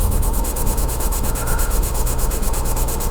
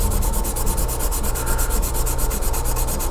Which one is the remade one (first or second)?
first